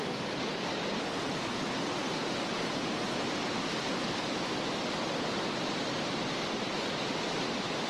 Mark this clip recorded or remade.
recorded